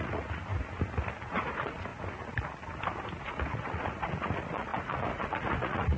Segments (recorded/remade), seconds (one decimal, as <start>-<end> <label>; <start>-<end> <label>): 0.0-0.5 remade; 0.5-1.3 recorded; 1.3-1.9 remade; 1.9-3.2 recorded; 3.2-6.0 remade